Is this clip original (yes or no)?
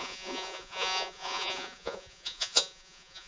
no